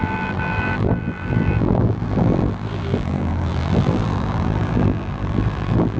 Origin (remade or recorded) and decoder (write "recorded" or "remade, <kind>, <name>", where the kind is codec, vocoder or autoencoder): remade, vocoder, BigVGAN v2